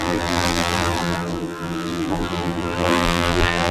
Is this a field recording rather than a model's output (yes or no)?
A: no